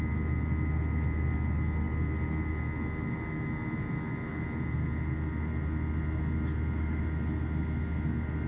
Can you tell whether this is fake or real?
real